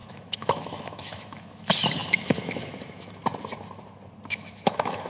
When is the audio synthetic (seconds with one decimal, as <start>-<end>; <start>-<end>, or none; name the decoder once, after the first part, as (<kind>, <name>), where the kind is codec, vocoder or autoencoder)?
0.0-3.2 (autoencoder, DAC-VAE); 4.3-5.1